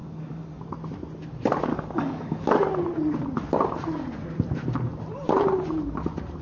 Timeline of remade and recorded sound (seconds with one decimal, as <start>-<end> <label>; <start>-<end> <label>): 0.0-0.6 remade; 0.6-1.7 recorded; 1.7-2.5 remade; 2.5-6.4 recorded